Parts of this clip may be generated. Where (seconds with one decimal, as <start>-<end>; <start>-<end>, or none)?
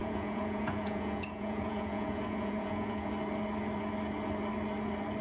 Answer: 0.0-3.1